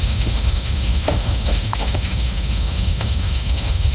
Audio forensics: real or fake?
fake